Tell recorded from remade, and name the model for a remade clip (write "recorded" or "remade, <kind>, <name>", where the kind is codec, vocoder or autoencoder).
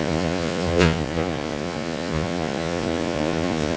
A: remade, vocoder, Vocos